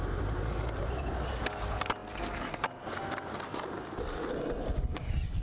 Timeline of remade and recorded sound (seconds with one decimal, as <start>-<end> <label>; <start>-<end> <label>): 0.0-5.4 recorded